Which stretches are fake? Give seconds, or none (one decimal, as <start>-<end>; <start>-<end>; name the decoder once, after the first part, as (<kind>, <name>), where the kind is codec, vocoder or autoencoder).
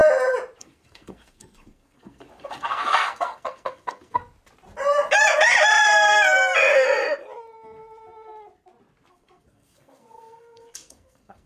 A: 0.6-4.2 (codec, SNAC); 9.1-11.5